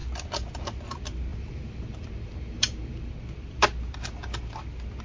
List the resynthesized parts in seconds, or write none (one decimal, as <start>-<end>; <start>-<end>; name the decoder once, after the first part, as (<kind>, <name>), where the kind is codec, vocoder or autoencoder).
1.3-3.1 (vocoder, BigVGAN v2)